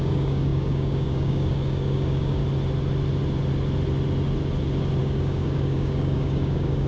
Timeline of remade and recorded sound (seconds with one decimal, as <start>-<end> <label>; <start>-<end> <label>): 0.0-2.4 remade; 2.4-5.0 recorded; 5.0-6.9 remade